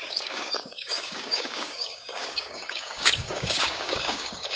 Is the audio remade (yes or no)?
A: yes